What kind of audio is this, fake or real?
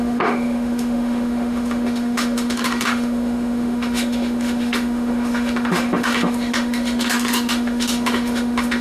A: fake